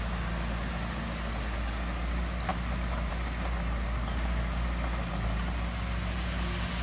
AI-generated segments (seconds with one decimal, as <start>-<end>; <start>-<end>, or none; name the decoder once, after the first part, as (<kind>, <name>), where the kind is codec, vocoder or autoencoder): none